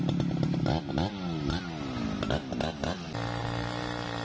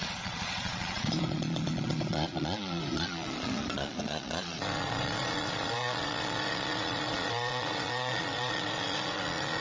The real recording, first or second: first